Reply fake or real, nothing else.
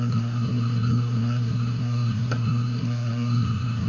fake